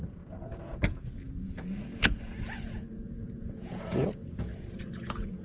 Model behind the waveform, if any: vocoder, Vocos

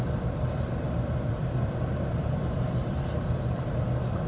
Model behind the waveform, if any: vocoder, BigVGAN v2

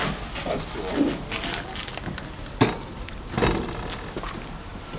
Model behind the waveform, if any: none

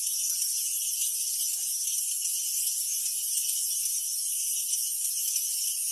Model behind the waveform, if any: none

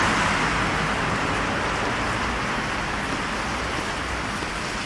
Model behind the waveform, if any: none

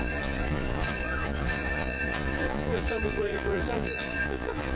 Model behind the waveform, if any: vocoder, Vocos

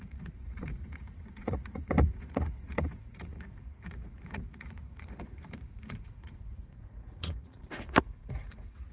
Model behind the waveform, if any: vocoder, Vocos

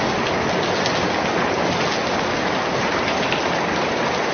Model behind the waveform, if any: none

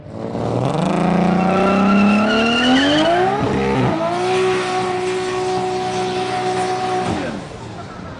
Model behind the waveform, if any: none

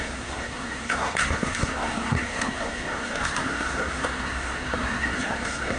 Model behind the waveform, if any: codec, SNAC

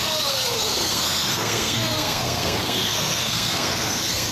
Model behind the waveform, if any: codec, SNAC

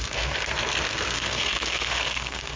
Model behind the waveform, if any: codec, SNAC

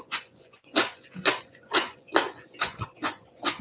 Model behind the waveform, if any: vocoder, Vocos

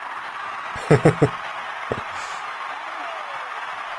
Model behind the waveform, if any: none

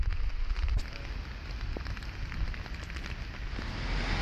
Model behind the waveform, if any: none